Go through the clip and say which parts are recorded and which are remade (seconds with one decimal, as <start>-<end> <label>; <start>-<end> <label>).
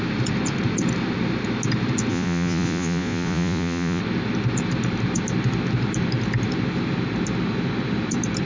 0.0-2.1 recorded; 2.1-4.0 remade; 4.0-8.4 recorded